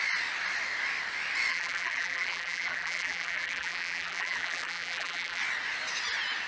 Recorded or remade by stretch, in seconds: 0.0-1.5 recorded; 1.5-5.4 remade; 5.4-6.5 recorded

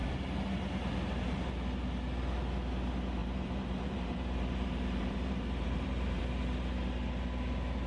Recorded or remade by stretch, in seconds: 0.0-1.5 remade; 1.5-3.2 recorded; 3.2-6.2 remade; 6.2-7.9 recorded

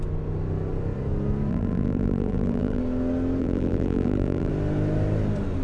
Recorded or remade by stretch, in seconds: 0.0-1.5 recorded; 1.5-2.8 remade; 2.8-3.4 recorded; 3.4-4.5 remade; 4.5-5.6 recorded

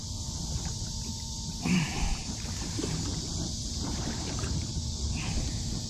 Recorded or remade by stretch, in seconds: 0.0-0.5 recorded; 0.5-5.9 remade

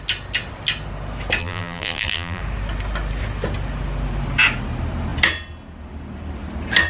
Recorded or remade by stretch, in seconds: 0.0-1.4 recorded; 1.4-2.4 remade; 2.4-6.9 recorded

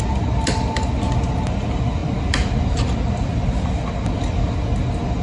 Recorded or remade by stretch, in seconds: 0.0-2.0 recorded; 2.0-3.6 remade; 3.6-5.2 recorded